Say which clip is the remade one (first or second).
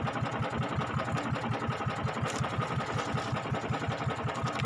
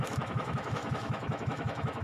second